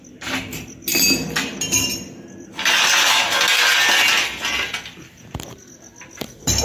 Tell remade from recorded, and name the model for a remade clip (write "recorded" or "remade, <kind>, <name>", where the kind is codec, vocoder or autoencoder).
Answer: recorded